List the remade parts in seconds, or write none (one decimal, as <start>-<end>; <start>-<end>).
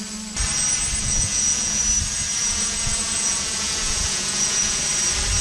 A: 1.0-1.8; 2.4-4.8